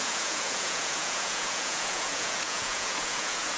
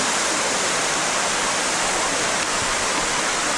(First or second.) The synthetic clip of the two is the first